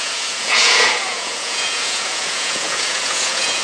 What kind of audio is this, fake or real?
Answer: fake